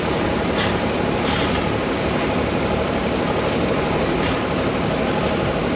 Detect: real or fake real